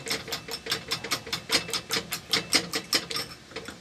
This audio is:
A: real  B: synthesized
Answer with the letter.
A